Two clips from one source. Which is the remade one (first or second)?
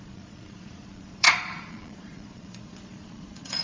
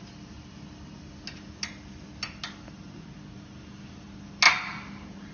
first